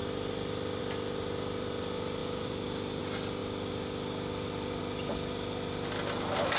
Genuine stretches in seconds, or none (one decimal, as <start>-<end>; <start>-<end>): 0.8-2.2; 3.0-6.6